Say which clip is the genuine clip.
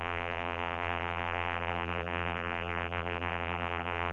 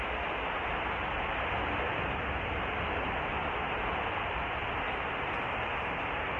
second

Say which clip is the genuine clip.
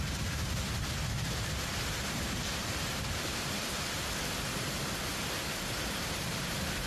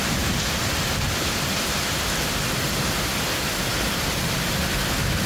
second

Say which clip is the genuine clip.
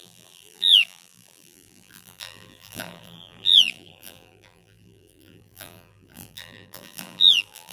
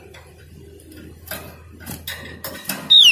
second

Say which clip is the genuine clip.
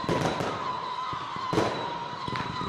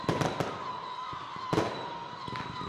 second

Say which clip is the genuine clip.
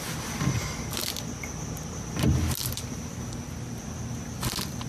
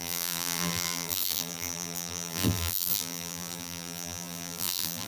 first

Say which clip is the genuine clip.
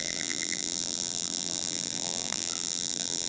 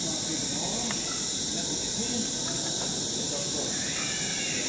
second